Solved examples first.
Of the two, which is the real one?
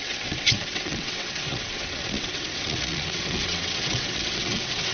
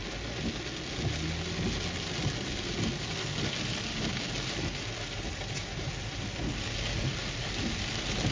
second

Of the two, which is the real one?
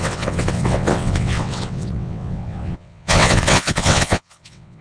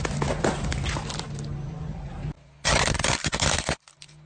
second